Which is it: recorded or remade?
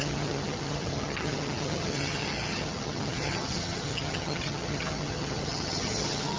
remade